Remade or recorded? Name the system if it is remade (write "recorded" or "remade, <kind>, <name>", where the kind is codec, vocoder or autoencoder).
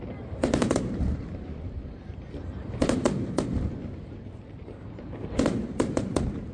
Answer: remade, vocoder, BigVGAN v2